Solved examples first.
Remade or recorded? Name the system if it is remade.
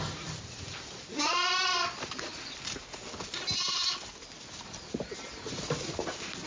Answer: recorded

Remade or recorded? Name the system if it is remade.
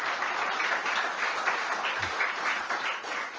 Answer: recorded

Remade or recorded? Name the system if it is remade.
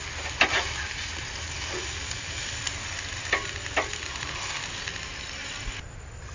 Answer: recorded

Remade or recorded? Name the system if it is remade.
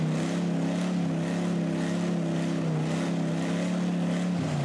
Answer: recorded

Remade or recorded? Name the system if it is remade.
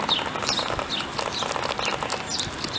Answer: recorded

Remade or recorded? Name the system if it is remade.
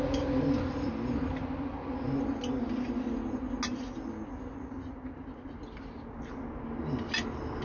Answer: recorded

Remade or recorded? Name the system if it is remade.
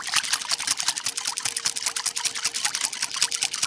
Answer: recorded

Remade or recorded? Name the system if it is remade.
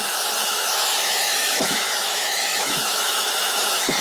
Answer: remade, autoencoder, DAC-VAE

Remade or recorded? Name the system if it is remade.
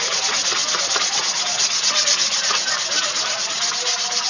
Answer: recorded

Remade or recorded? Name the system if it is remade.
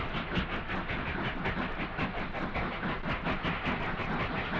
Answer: recorded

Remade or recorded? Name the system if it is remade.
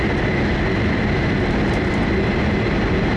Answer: recorded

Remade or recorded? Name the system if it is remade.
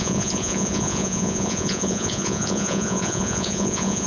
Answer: remade, vocoder, Vocos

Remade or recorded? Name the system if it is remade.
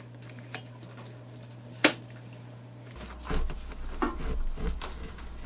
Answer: recorded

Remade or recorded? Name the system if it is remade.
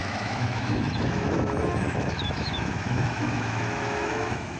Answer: remade, autoencoder, DAC-VAE